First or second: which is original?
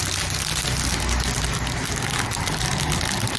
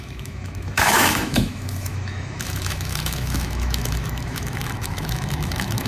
first